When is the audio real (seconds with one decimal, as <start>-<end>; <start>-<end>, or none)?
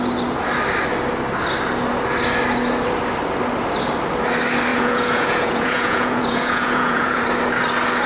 0.0-4.7; 7.2-8.1